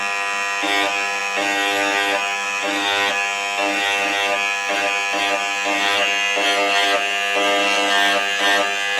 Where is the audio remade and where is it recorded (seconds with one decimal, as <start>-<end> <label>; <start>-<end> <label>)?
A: 0.0-9.0 recorded